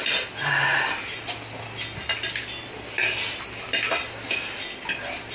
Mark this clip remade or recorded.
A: recorded